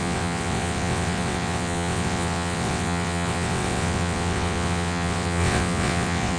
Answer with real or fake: fake